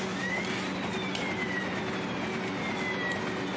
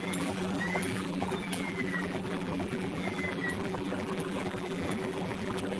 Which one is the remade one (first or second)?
second